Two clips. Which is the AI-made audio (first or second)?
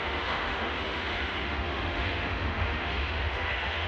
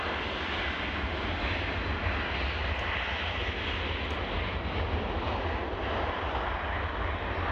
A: first